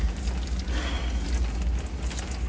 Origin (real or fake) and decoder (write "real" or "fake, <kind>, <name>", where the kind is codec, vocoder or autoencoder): real